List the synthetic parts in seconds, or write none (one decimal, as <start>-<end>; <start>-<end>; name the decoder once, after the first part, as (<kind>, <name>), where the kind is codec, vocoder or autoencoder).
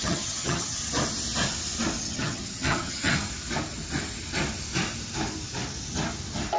0.0-0.8 (vocoder, HiFi-GAN); 2.0-3.1